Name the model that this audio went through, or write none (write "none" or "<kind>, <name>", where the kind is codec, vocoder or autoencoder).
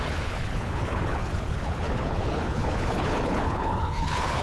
codec, HILCodec